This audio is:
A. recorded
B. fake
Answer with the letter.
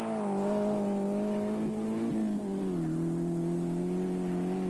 A